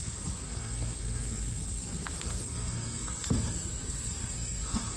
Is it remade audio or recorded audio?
remade